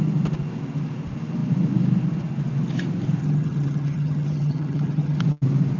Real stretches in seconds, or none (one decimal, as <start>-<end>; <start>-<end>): 0.0-3.2; 5.2-5.8